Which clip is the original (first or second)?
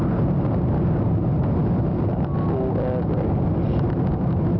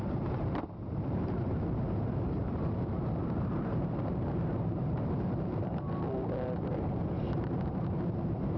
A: first